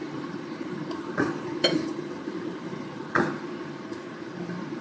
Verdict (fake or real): fake